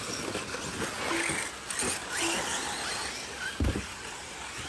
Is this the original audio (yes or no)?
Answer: yes